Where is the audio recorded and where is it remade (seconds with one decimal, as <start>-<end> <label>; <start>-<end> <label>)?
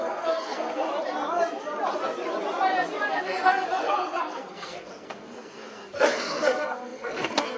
0.0-0.9 remade; 0.9-3.1 recorded; 3.1-7.6 remade